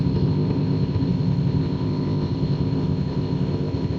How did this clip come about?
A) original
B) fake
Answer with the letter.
B